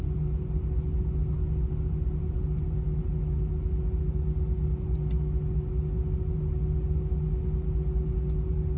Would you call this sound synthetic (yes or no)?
no